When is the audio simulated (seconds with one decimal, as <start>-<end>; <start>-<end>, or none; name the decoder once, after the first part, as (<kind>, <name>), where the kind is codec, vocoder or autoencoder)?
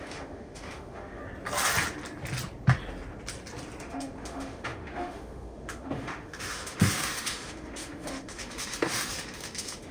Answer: 0.0-1.2 (autoencoder, DAC-VAE); 3.8-9.9